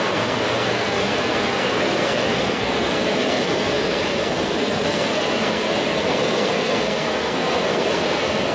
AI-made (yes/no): yes